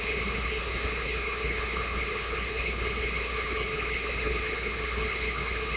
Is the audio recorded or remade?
remade